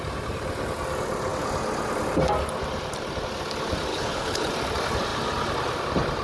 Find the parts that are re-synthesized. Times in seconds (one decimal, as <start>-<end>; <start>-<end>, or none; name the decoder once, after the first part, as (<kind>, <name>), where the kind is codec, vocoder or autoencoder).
3.9-4.5 (codec, HILCodec)